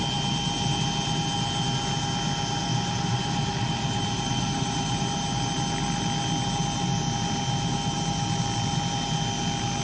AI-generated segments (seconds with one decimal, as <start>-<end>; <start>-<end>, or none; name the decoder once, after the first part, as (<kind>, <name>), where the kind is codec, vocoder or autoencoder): 2.7-5.0 (vocoder, BigVGAN v2)